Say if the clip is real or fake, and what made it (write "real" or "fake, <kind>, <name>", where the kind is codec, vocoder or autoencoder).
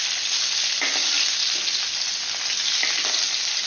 real